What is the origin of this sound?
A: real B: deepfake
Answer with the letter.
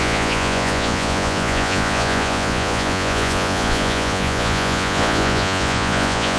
B